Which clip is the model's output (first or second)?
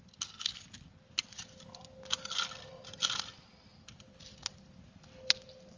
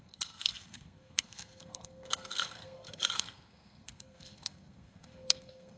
second